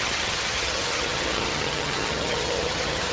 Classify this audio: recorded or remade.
remade